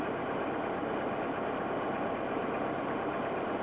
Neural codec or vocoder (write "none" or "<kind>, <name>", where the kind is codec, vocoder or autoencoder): none